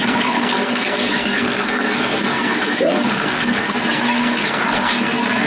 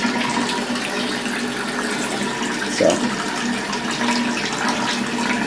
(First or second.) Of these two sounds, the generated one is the first